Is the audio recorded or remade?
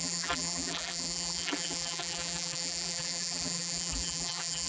remade